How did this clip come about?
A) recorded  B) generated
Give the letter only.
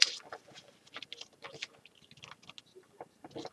A